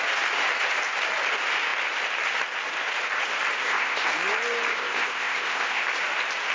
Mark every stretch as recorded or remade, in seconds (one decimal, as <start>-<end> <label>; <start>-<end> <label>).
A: 0.0-3.6 recorded; 3.6-4.1 remade; 4.1-4.7 recorded; 4.7-5.8 remade; 5.8-6.5 recorded